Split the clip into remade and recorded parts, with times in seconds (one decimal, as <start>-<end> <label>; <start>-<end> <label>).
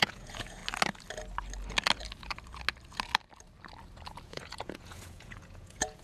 0.0-0.6 remade; 0.6-4.2 recorded; 4.2-6.0 remade